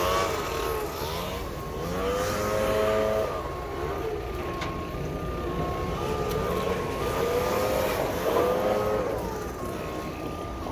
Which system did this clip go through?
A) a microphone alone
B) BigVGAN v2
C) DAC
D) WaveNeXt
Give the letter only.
A